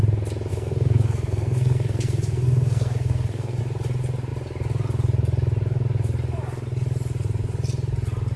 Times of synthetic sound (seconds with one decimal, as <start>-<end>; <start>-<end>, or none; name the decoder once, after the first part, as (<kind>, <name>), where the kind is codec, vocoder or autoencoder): 0.5-3.6 (codec, SNAC)